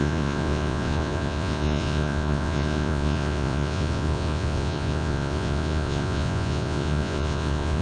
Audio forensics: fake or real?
fake